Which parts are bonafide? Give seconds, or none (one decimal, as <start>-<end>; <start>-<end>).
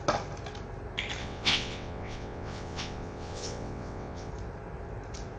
0.0-1.2; 4.3-5.4